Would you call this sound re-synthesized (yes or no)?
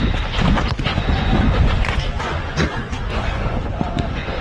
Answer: yes